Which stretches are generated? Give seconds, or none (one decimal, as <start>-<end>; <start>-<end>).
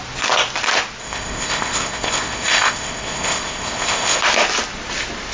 1.0-4.2